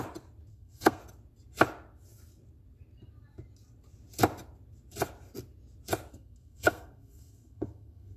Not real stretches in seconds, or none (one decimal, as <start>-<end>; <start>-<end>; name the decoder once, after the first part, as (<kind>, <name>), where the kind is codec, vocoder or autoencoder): 0.5-1.0 (codec, SNAC); 6.1-8.2

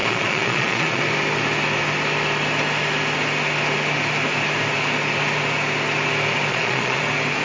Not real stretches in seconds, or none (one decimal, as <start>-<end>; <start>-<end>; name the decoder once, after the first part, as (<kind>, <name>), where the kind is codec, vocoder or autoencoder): 0.0-1.0 (vocoder, Vocos); 6.5-7.0